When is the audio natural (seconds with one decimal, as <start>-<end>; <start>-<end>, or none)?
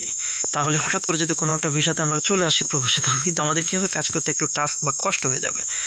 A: none